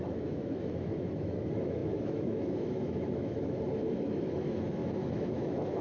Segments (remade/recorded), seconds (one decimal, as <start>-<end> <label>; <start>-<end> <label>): 0.0-5.8 remade